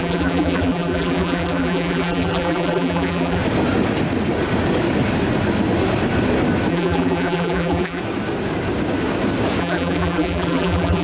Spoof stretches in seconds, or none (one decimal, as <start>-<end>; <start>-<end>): 0.0-3.4; 6.7-8.0; 9.6-11.0